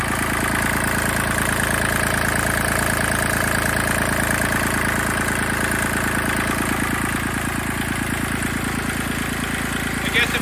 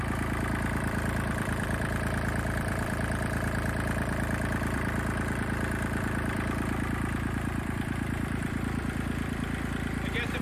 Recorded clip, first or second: first